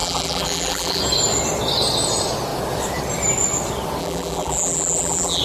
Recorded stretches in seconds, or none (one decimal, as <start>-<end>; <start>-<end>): 1.0-4.0